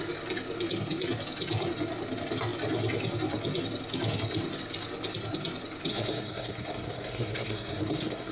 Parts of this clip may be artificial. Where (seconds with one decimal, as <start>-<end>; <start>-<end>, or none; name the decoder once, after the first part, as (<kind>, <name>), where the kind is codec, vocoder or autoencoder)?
5.9-8.3 (codec, SNAC)